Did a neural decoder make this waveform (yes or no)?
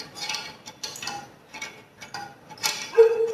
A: no